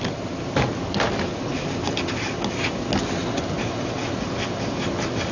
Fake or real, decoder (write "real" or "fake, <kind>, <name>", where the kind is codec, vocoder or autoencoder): real